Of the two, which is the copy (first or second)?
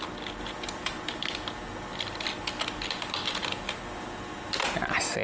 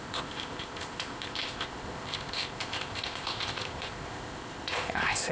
second